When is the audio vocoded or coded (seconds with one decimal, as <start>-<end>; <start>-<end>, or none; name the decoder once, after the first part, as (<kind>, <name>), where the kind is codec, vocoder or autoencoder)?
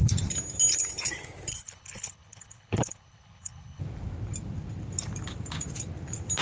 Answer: 1.5-3.8 (codec, HILCodec)